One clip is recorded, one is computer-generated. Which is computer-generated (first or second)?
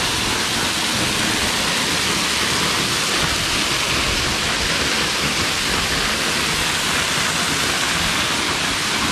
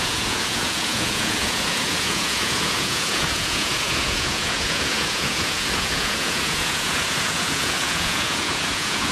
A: second